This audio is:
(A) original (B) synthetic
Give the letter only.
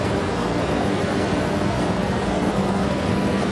B